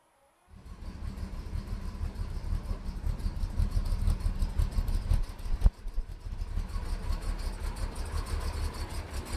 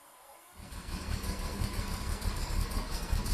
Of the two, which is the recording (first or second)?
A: first